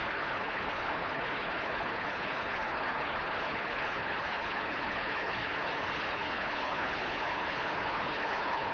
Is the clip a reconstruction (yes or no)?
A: yes